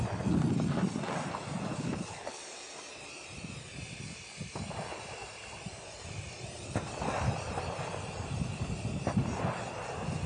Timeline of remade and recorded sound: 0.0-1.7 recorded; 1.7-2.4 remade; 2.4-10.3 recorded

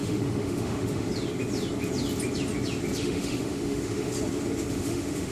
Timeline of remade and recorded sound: 0.0-1.1 remade; 1.1-3.0 recorded; 3.0-4.1 remade; 4.1-4.7 recorded; 4.7-5.3 remade

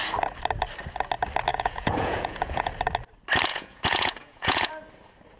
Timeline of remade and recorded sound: 0.0-1.5 recorded; 1.5-2.7 remade; 2.7-3.5 recorded; 3.5-4.7 remade; 4.7-5.4 recorded

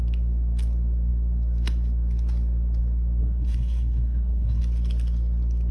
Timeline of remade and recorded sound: 0.0-3.2 recorded; 3.2-4.6 remade; 4.6-5.7 recorded

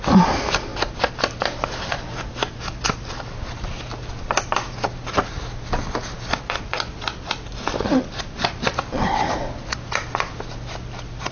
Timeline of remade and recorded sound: 0.0-11.3 recorded

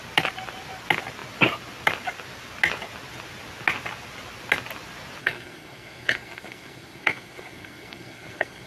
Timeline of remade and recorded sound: 0.0-5.2 recorded; 5.2-8.7 remade

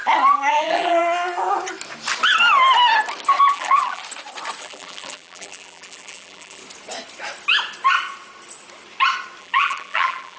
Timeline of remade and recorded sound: 0.0-0.5 recorded; 0.5-1.0 remade; 1.0-3.4 recorded; 3.4-4.0 remade; 4.0-4.6 recorded; 4.6-6.6 remade; 6.6-9.4 recorded; 9.4-10.4 remade

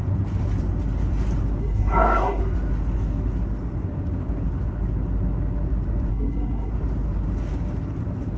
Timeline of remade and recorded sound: 0.0-1.6 recorded; 1.6-2.4 remade; 2.4-6.1 recorded; 6.1-6.7 remade; 6.7-8.4 recorded